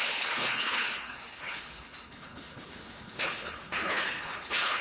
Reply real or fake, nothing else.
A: fake